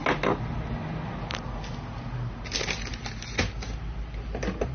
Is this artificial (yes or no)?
no